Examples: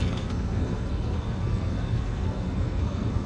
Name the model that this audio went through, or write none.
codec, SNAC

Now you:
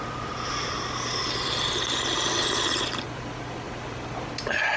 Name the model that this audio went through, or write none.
none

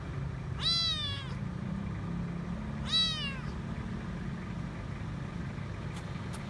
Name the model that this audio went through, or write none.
none